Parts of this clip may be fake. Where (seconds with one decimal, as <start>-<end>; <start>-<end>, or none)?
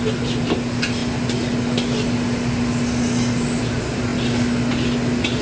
none